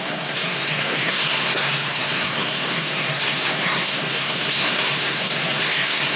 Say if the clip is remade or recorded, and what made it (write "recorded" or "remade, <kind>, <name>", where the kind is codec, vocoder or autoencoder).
remade, codec, SNAC